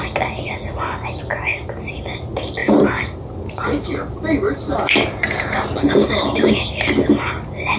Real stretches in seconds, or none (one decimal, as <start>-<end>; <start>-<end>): 0.0-2.6; 6.5-7.8